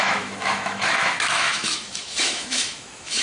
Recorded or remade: remade